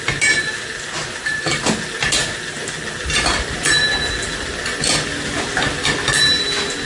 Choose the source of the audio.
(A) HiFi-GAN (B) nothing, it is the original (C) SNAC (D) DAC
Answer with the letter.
B